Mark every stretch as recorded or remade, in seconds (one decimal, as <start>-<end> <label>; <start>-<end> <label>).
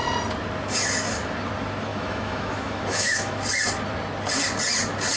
0.0-1.9 recorded; 1.9-3.4 remade; 3.4-5.2 recorded